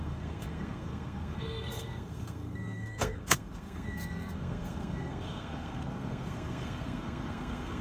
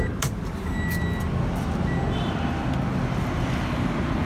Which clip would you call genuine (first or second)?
second